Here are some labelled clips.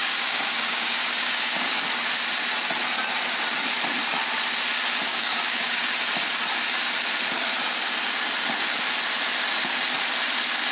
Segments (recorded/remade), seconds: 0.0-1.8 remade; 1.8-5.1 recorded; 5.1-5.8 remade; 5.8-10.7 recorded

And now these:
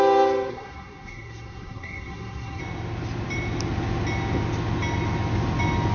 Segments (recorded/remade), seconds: 0.0-0.5 recorded; 0.5-2.6 remade; 2.6-5.9 recorded

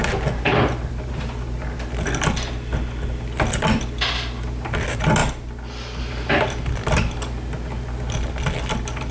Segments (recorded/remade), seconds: 0.0-9.1 recorded

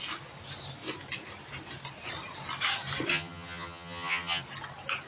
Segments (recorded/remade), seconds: 0.0-3.1 recorded; 3.1-4.4 remade; 4.4-5.1 recorded

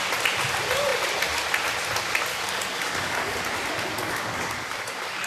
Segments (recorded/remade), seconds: 0.0-2.3 recorded; 2.3-3.4 remade; 3.4-4.0 recorded; 4.0-5.3 remade

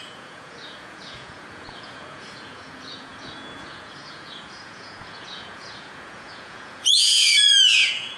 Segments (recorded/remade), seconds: 0.0-8.2 remade

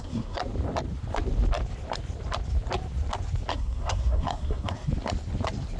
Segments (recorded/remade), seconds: 0.0-0.4 remade; 0.4-3.5 recorded; 3.5-4.9 remade; 4.9-5.8 recorded